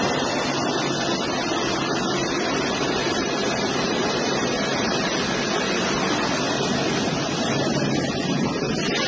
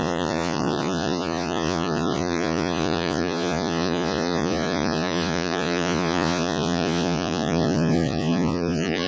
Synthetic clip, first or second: second